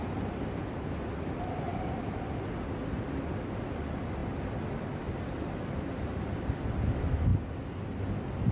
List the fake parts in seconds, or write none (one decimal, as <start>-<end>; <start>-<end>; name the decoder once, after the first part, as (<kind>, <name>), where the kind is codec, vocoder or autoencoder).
none